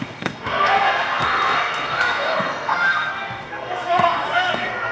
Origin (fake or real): fake